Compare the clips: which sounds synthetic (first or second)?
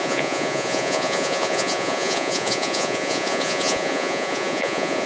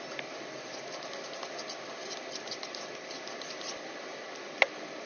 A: first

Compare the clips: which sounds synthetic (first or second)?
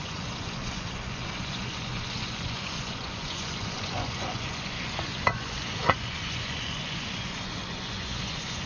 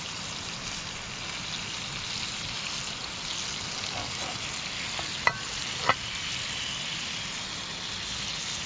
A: first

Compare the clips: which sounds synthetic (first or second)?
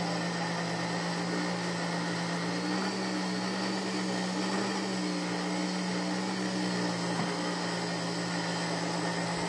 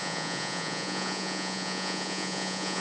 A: second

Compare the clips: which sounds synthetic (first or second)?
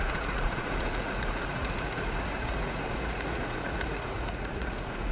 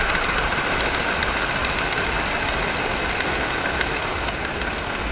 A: first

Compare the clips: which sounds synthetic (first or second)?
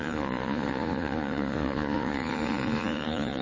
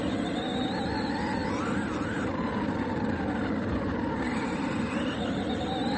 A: first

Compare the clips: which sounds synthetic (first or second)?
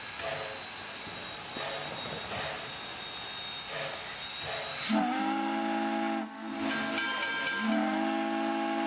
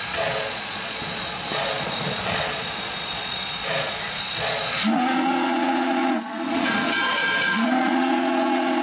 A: second